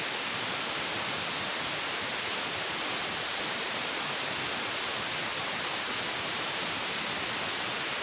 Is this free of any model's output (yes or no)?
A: yes